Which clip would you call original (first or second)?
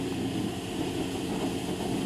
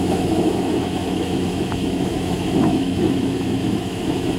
first